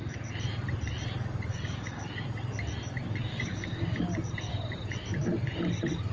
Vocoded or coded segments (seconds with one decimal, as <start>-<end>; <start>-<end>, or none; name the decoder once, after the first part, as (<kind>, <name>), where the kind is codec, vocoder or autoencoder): 1.5-2.0 (codec, DAC); 3.3-4.0